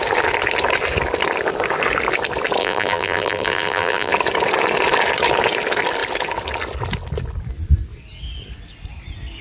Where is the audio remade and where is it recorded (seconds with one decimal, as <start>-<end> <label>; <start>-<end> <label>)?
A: 0.0-2.6 recorded; 2.6-4.1 remade; 4.1-9.4 recorded